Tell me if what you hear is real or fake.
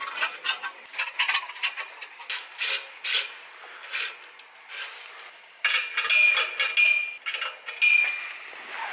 real